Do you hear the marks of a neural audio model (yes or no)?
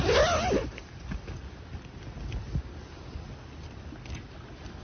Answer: no